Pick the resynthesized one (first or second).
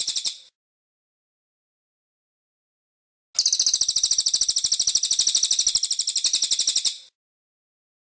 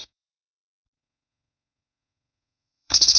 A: second